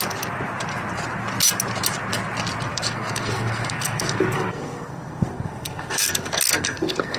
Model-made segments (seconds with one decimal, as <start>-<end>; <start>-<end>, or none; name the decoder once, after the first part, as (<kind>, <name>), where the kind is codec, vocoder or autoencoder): 2.7-7.2 (codec, SNAC)